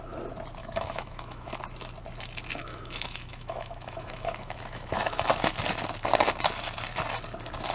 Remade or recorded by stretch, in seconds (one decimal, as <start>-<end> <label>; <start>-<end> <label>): 0.0-0.6 recorded; 0.6-1.6 remade; 1.6-2.6 recorded; 2.6-5.3 remade; 5.3-7.7 recorded